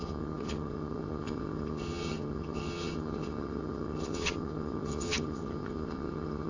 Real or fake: fake